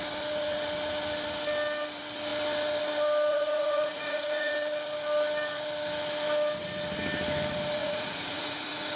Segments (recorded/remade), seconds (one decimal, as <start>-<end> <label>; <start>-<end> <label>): 0.0-3.3 recorded; 3.3-4.5 remade; 4.5-7.8 recorded; 7.8-9.0 remade